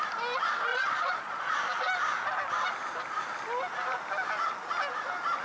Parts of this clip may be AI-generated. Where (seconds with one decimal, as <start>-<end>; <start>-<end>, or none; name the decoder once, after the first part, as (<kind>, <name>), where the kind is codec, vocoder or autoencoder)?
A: 0.7-1.5 (vocoder, Vocos)